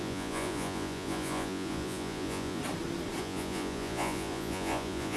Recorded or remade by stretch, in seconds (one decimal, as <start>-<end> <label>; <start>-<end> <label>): 0.0-2.6 remade; 2.6-3.2 recorded; 3.2-5.2 remade